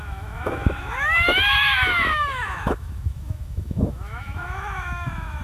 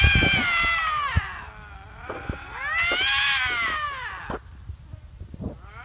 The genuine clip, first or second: second